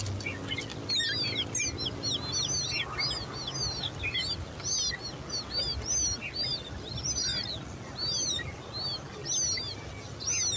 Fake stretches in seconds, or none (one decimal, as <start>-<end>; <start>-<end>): none